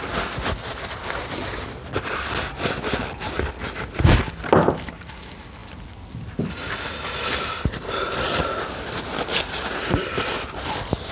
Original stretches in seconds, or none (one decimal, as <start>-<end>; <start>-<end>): 0.0-11.1

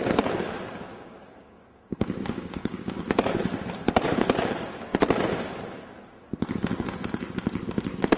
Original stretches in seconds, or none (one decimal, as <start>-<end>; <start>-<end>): 0.0-0.9; 3.0-8.2

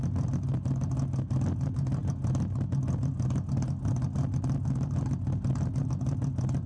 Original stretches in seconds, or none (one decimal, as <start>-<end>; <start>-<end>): 0.0-6.7

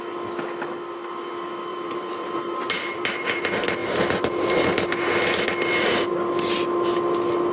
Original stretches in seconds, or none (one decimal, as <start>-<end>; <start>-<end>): 0.0-1.7; 2.5-3.8; 4.6-7.5

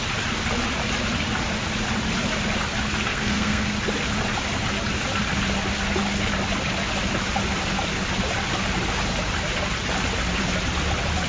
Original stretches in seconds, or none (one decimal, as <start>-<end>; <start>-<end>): 0.0-3.1; 3.7-11.3

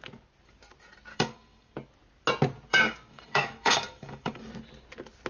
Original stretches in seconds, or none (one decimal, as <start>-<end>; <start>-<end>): 0.0-1.1; 1.7-2.7; 4.5-5.3

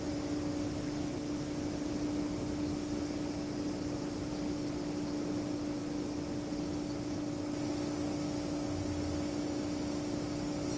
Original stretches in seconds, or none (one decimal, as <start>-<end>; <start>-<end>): 0.0-10.8

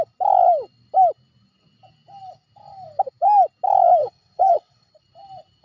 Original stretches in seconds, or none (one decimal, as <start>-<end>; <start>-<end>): 0.0-4.0; 4.9-5.6